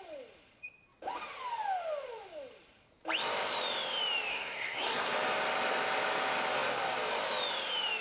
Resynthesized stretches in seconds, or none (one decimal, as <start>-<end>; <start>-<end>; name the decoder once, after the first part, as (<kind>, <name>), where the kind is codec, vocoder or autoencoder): 4.3-5.1 (codec, SNAC)